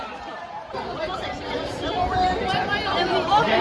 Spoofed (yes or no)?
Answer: yes